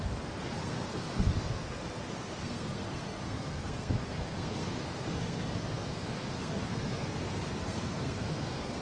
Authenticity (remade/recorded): remade